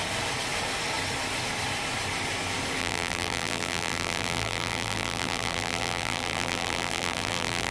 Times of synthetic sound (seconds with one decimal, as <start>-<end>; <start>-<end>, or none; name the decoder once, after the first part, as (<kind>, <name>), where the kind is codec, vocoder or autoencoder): 2.8-7.7 (vocoder, BigVGAN v2)